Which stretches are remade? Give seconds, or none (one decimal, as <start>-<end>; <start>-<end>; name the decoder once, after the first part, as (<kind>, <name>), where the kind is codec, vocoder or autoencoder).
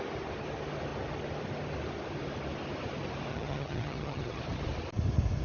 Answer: 3.3-4.4 (vocoder, HiFi-GAN)